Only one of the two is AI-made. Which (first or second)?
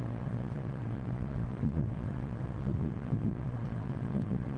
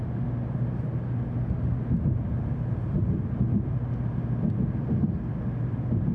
first